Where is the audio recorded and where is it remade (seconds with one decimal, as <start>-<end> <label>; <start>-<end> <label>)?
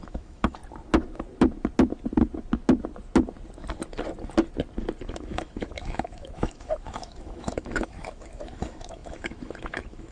0.0-0.6 remade; 0.6-5.0 recorded; 5.0-10.1 remade